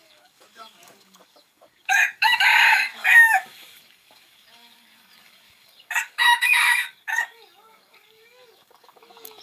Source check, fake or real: fake